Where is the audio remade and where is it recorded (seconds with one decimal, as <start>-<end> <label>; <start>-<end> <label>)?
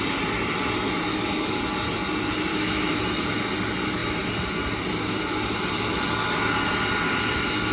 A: 0.0-1.1 recorded; 1.1-1.6 remade; 1.6-2.5 recorded; 2.5-3.0 remade; 3.0-7.7 recorded